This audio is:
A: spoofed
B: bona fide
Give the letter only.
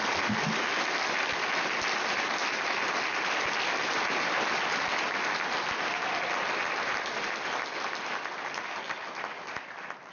B